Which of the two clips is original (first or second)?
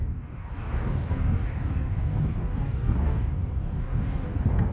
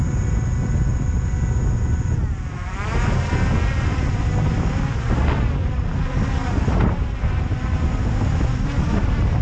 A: second